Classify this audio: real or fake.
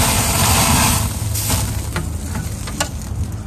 real